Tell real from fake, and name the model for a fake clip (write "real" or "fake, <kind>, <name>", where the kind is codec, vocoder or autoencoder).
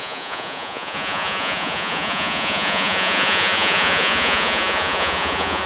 fake, vocoder, Vocos